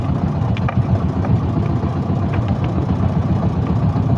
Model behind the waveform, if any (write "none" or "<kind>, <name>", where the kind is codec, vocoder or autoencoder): none